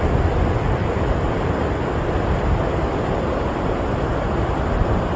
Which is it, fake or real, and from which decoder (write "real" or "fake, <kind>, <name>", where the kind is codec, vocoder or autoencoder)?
real